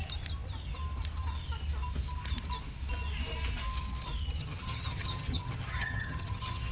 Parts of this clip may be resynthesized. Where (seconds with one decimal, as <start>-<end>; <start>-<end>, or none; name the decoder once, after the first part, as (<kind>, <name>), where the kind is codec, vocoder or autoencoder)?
4.4-6.7 (vocoder, HiFi-GAN)